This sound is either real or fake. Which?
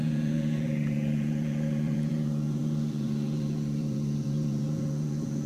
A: fake